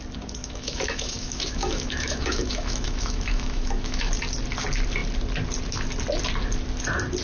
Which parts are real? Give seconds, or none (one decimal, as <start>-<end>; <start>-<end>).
0.0-0.4; 4.1-7.2